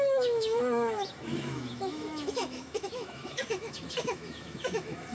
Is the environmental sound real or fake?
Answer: fake